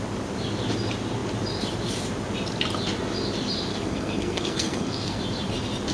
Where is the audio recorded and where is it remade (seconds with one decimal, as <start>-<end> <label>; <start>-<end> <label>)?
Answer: 0.0-3.7 recorded; 3.7-5.2 remade; 5.2-5.9 recorded